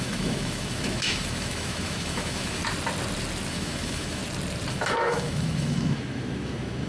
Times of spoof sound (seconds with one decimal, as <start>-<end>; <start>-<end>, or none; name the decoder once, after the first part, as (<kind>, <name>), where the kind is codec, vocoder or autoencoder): 0.0-2.6 (autoencoder, DAC-VAE); 3.5-4.2; 4.7-6.9